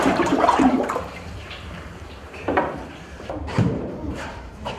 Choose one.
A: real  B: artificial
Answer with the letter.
B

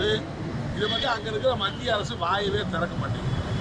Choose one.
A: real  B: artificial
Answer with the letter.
B